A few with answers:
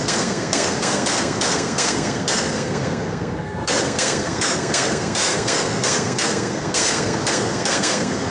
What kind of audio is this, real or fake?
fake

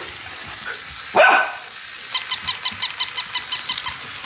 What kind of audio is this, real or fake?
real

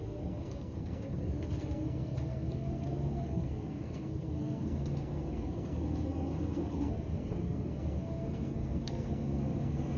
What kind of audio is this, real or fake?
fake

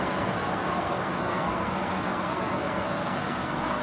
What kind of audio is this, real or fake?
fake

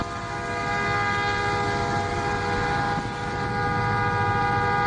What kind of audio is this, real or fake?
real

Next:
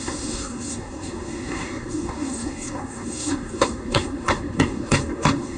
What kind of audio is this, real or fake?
fake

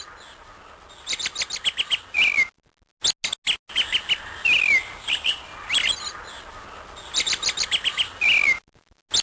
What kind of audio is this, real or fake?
real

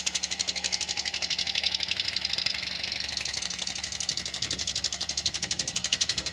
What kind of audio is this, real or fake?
fake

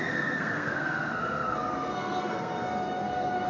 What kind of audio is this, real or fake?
fake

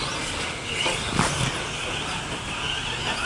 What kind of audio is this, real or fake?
real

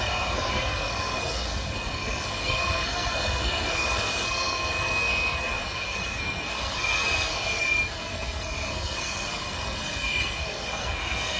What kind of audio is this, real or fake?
fake